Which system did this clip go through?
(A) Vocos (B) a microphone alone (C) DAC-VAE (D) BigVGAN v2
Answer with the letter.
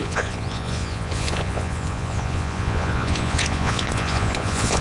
A